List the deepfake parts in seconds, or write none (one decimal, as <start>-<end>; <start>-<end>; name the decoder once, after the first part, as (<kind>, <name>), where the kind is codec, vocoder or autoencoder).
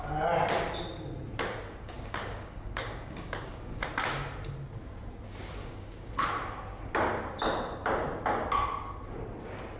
1.7-3.8 (codec, DAC); 5.6-6.1